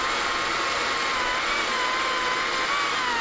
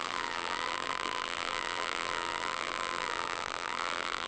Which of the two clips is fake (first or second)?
second